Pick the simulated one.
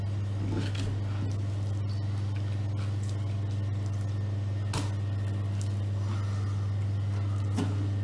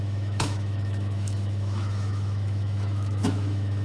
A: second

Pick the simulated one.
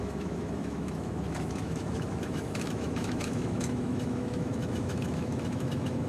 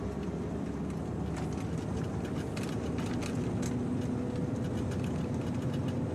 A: first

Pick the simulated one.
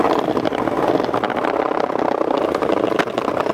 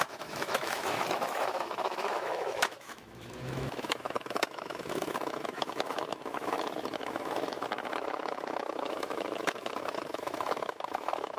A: second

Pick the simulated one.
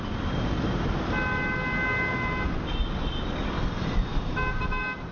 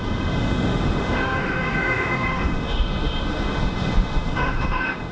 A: second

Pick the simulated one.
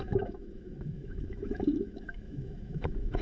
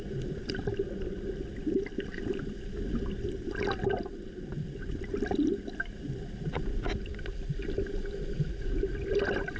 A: first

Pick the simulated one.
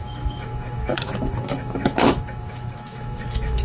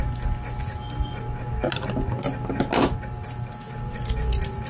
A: first